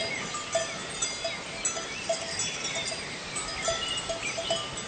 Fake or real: real